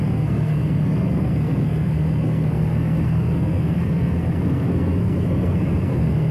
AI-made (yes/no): yes